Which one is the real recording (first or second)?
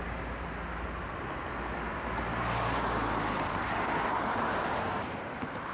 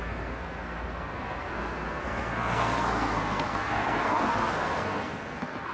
first